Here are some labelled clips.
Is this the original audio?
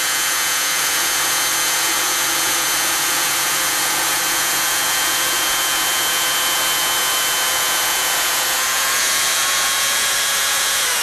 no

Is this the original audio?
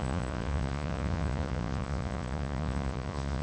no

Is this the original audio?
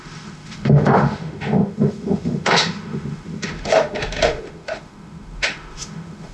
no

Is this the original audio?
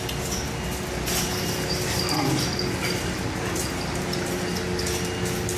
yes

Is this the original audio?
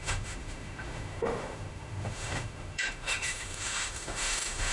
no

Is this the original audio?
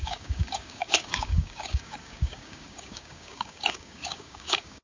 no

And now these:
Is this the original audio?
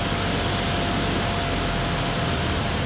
yes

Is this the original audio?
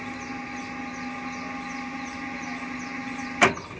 yes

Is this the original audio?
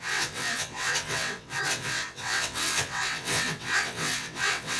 no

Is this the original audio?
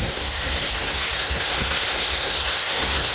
no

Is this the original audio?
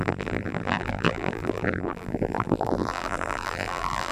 no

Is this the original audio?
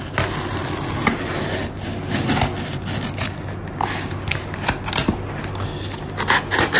yes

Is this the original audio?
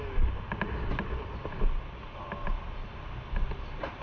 yes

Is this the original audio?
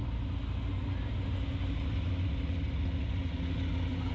yes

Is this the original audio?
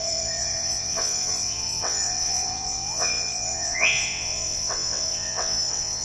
no